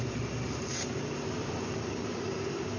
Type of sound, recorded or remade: remade